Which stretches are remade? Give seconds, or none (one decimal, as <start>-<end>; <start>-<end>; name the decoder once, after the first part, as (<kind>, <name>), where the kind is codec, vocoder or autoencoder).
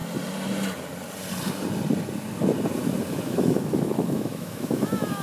3.1-5.2 (autoencoder, DAC-VAE)